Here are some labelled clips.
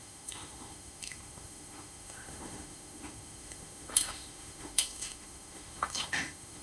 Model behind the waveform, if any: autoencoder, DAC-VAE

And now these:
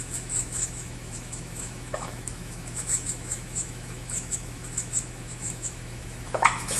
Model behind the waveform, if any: autoencoder, DAC-VAE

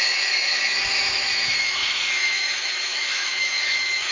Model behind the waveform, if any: autoencoder, DAC-VAE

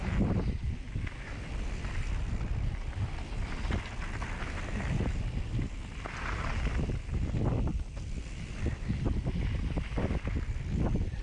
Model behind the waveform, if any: none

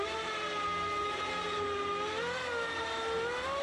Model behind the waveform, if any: none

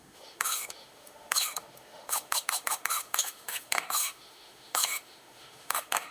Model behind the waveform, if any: autoencoder, DAC-VAE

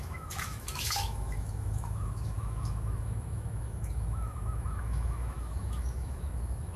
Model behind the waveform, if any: autoencoder, DAC-VAE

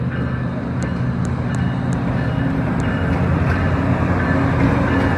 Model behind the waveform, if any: none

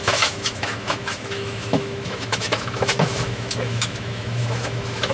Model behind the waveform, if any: autoencoder, DAC-VAE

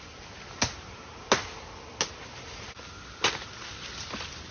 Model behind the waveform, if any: none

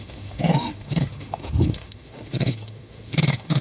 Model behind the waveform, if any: autoencoder, DAC-VAE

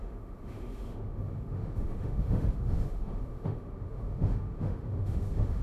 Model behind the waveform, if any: autoencoder, DAC-VAE